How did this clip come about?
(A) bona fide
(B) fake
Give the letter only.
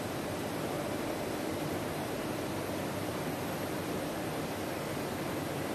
A